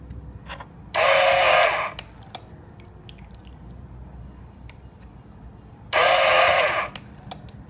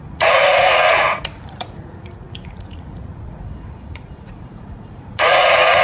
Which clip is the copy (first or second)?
second